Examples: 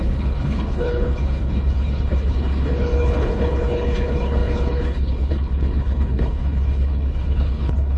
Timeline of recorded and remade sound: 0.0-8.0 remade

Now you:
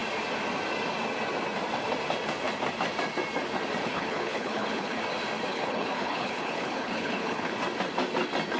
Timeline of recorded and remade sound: 0.0-3.8 recorded; 3.8-5.0 remade; 5.0-5.5 recorded; 5.5-7.5 remade; 7.5-8.6 recorded

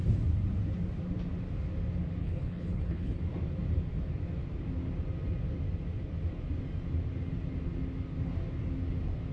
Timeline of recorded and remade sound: 0.0-2.2 recorded; 2.2-3.2 remade; 3.2-9.3 recorded

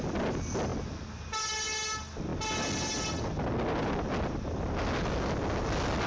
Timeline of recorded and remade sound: 0.0-6.1 recorded